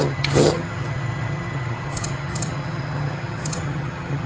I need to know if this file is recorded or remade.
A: remade